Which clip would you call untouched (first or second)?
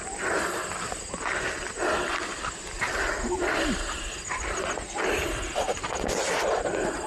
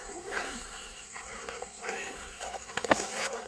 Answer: first